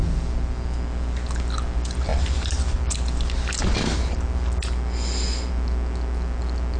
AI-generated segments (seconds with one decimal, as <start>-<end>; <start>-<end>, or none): none